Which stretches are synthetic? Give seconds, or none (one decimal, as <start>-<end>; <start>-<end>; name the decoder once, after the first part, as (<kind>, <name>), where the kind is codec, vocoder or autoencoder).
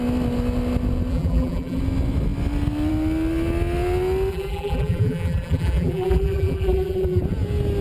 1.1-1.8 (vocoder, BigVGAN v2); 4.3-7.2